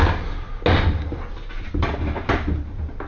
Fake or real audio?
real